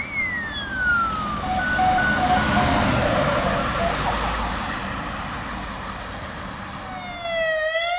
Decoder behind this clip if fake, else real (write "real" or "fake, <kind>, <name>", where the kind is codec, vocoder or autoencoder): real